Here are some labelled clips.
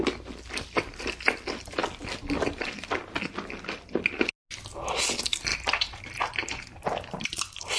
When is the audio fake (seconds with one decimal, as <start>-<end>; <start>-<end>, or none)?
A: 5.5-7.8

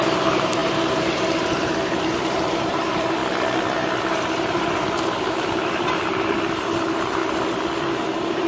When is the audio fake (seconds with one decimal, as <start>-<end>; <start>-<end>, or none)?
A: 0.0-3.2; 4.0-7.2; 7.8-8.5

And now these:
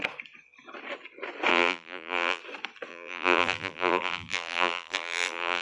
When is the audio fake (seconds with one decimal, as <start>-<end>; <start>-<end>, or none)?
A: 1.5-2.4; 2.9-5.6

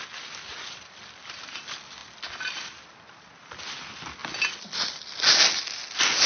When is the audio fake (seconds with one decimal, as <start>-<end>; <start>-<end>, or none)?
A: 2.0-3.3